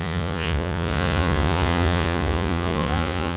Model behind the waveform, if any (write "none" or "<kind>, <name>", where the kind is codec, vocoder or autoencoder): vocoder, Vocos